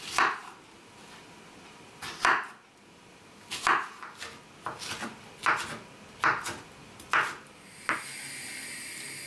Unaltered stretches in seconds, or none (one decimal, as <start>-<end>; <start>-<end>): 0.0-9.3

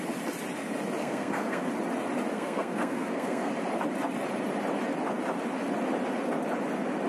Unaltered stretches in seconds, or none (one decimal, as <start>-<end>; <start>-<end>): 0.0-1.0; 1.7-2.3; 3.5-7.1